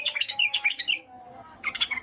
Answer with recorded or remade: remade